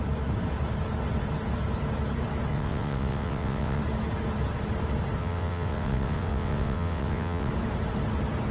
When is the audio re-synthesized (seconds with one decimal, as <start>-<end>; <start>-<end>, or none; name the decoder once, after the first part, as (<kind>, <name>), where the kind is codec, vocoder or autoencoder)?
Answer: 2.5-3.8 (vocoder, WaveNeXt); 5.2-7.5